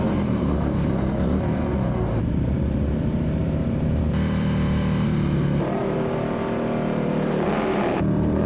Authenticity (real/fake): fake